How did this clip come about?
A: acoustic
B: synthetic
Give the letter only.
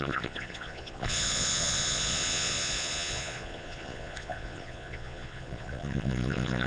B